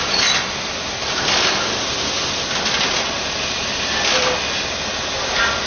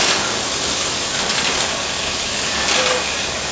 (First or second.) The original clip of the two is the first